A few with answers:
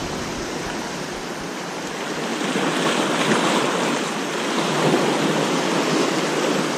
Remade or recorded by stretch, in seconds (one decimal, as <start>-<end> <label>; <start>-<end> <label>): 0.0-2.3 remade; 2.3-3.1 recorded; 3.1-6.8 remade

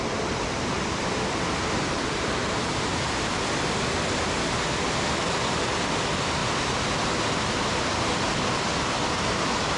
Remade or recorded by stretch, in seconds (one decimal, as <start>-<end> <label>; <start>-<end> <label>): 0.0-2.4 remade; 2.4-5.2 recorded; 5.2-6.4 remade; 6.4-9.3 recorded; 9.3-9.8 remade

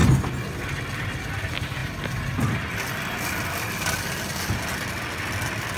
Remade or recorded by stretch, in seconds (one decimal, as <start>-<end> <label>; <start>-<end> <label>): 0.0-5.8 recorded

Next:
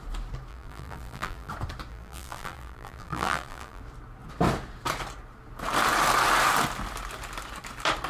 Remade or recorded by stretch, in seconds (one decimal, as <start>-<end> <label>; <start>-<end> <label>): 0.0-0.5 recorded; 0.5-1.5 remade; 1.5-1.9 recorded; 1.9-3.8 remade; 3.8-8.1 recorded

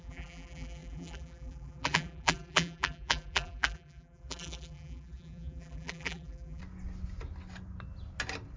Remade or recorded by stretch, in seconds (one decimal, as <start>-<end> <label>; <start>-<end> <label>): 0.0-6.6 remade; 6.6-8.6 recorded